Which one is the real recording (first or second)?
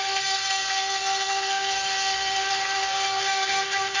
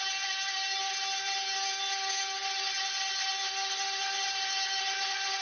second